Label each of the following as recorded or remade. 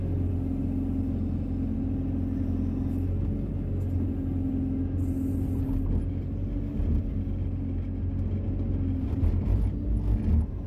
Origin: recorded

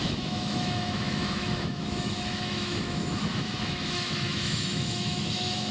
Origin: remade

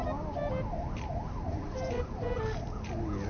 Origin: recorded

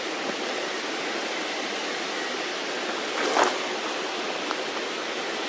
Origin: recorded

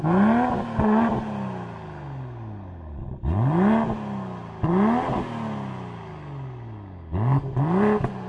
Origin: recorded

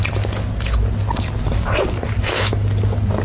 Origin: recorded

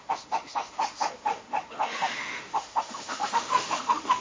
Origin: remade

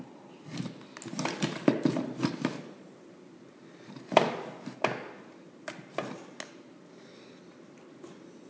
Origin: recorded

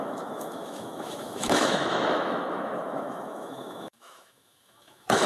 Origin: remade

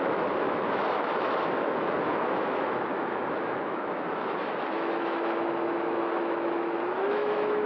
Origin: remade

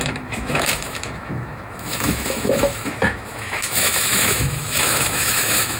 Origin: remade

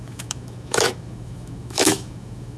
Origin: remade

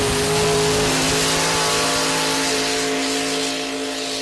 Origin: recorded